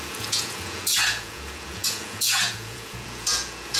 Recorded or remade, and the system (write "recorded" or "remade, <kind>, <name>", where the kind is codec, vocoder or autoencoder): remade, vocoder, Vocos